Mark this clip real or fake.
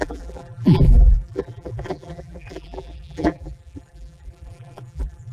fake